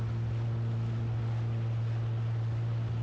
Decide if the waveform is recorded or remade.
recorded